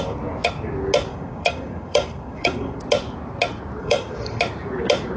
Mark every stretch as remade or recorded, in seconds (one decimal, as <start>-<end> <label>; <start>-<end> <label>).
0.0-1.1 recorded; 1.1-2.8 remade; 2.8-3.8 recorded; 3.8-4.4 remade; 4.4-5.2 recorded